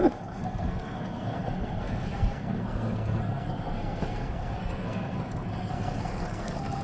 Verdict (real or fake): fake